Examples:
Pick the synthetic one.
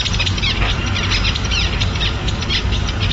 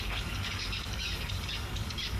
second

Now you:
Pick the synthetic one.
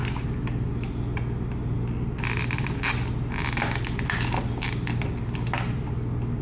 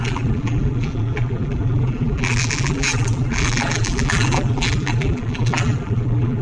second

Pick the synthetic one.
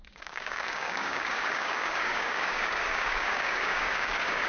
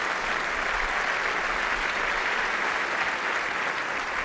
first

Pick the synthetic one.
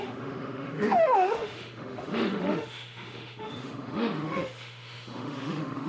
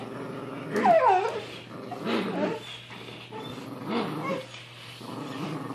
first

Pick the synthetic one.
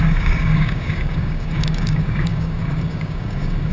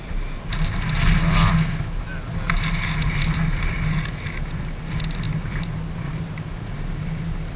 first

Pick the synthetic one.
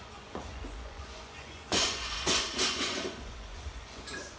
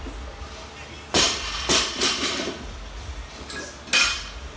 first